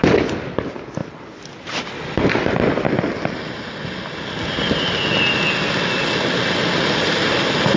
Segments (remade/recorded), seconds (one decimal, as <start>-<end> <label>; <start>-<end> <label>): 0.0-7.8 recorded